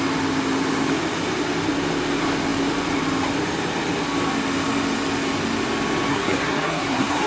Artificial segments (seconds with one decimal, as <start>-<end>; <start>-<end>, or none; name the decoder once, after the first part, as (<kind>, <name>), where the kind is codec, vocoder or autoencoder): 6.1-7.3 (codec, SNAC)